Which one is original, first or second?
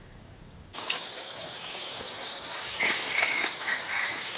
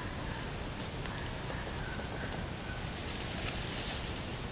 second